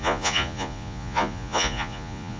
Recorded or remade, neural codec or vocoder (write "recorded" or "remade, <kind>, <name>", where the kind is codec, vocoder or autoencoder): remade, vocoder, Vocos